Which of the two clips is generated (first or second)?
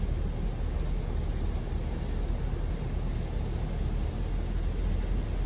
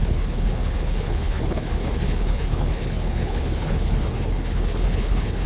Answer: second